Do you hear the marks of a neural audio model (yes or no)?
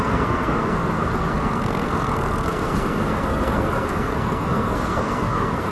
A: yes